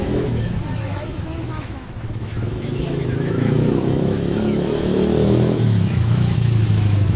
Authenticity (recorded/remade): remade